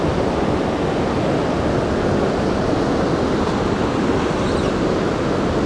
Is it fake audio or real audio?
real